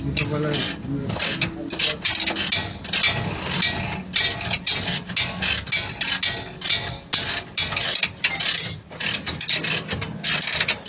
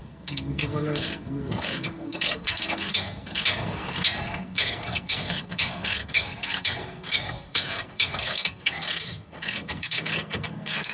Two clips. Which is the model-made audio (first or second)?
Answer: second